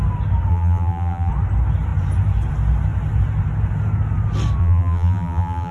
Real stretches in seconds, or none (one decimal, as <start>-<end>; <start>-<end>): 0.0-0.5; 1.3-4.6